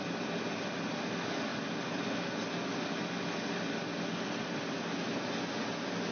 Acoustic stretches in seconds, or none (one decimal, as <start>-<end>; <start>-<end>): 0.0-6.1